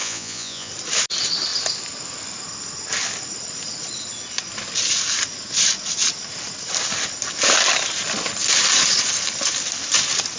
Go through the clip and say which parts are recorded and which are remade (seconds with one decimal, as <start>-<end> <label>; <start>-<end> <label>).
0.0-0.7 remade; 0.7-10.4 recorded